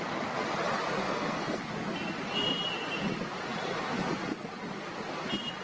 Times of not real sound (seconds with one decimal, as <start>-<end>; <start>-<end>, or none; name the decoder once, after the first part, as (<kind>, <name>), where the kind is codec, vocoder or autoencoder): 1.0-1.6 (codec, SNAC)